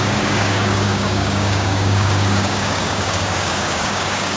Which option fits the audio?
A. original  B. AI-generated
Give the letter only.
B